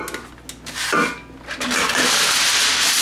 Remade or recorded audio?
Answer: recorded